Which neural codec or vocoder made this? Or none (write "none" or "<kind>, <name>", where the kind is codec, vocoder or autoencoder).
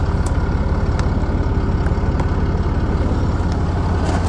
none